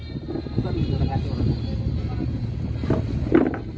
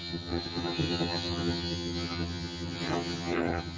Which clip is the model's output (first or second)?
second